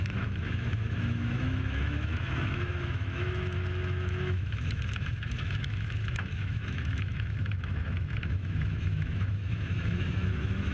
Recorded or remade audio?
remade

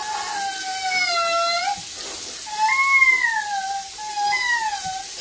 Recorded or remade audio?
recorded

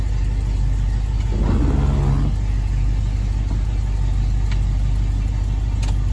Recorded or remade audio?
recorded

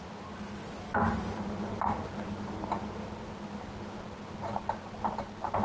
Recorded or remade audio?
recorded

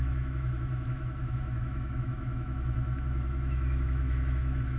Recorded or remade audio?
remade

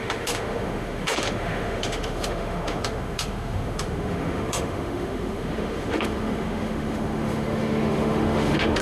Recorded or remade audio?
remade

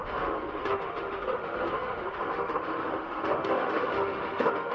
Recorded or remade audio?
remade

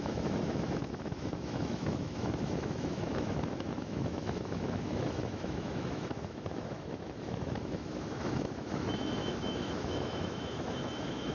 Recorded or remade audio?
remade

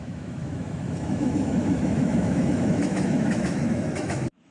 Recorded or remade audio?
remade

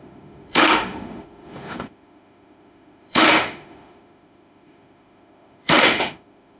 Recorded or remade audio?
remade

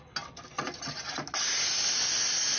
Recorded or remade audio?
recorded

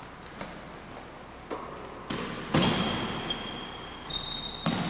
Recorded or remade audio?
recorded